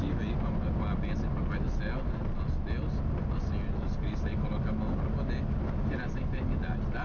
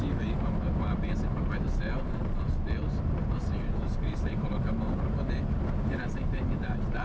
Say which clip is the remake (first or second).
second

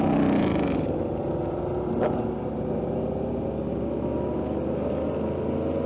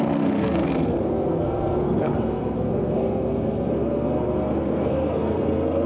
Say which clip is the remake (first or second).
second